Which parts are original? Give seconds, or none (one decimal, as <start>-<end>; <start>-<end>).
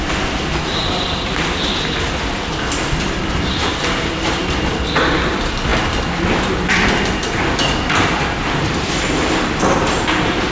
0.0-10.5